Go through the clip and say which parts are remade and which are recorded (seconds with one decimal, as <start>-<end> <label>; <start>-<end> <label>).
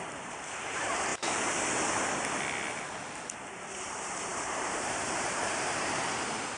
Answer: 0.0-1.1 remade; 1.1-3.9 recorded; 3.9-6.6 remade